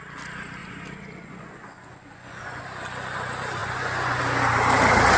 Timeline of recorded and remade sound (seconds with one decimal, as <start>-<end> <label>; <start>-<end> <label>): 0.0-0.6 recorded; 0.6-2.6 remade; 2.6-3.6 recorded; 3.6-4.2 remade; 4.2-5.2 recorded